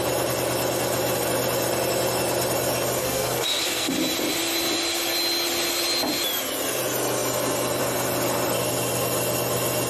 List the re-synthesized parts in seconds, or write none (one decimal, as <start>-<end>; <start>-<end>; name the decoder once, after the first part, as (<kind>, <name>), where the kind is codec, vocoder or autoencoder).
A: 3.0-3.9 (codec, SNAC)